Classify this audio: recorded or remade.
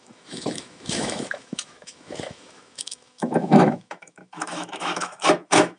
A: remade